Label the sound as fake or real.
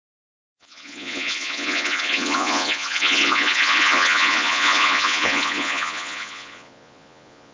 fake